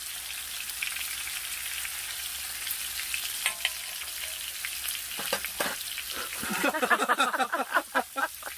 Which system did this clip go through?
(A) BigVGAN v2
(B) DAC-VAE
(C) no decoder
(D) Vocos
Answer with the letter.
C